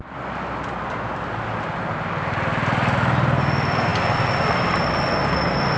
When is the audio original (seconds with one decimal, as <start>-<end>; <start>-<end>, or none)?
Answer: 0.0-5.8